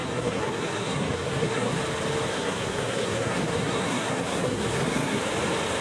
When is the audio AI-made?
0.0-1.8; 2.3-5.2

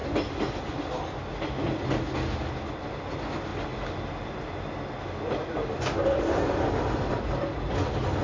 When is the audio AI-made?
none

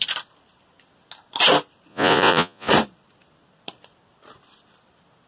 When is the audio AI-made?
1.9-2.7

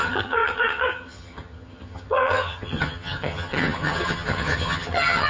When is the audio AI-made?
0.0-5.3